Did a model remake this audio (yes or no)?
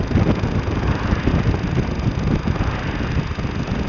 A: no